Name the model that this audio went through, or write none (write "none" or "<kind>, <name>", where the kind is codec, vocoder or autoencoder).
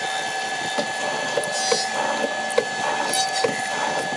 none